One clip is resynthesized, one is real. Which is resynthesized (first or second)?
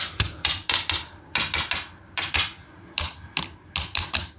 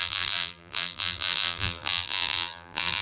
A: second